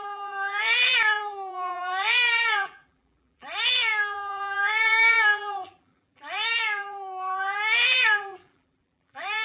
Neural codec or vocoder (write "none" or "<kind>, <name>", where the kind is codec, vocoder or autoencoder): vocoder, BigVGAN v2